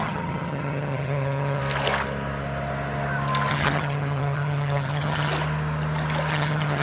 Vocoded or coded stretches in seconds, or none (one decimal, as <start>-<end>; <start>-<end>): 0.0-1.6; 3.5-5.3; 6.3-6.8